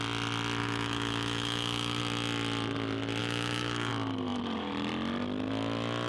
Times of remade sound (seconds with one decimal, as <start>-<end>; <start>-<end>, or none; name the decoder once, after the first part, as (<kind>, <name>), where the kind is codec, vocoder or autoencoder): 0.6-2.0 (autoencoder, DAC-VAE); 3.2-3.9